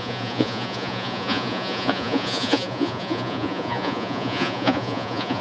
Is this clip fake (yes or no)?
yes